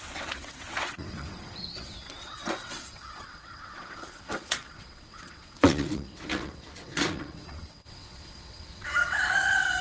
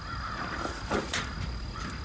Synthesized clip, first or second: first